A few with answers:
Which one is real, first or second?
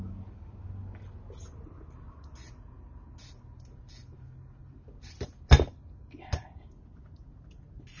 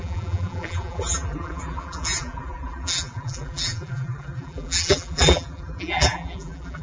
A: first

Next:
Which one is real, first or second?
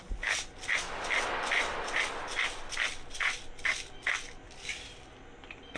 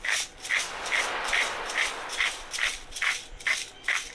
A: first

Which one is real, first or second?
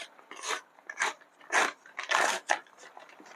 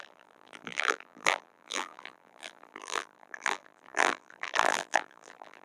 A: first